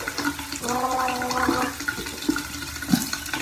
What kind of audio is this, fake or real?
real